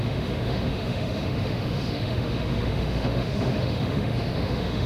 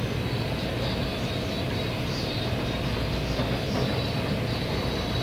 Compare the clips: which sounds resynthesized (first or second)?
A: first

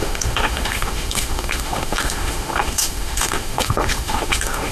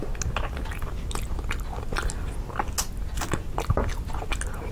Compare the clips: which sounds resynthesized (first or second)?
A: first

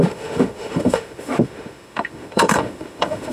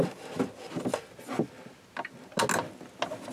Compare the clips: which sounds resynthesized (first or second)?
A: first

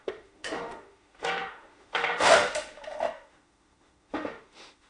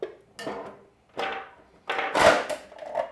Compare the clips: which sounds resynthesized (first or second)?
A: first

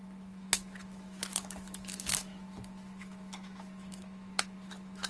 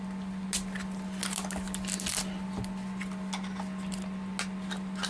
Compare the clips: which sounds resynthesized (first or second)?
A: first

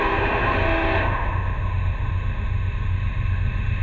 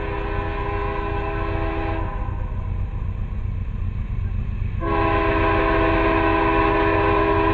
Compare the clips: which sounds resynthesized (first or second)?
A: first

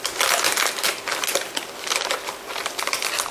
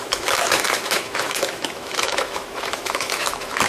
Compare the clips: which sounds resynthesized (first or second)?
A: second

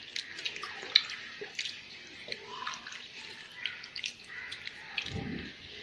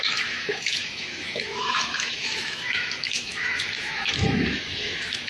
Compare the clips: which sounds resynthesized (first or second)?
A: second